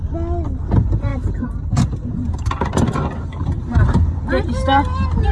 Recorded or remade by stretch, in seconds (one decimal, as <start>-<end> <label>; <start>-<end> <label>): 0.0-1.1 recorded; 1.1-4.3 remade; 4.3-5.3 recorded